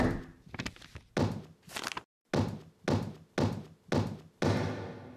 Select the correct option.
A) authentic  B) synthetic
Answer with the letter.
A